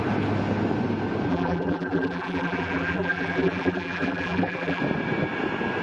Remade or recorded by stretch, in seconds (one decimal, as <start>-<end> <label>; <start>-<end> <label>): 0.0-1.3 recorded; 1.3-4.8 remade; 4.8-5.8 recorded